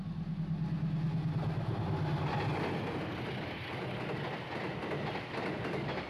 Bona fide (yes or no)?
yes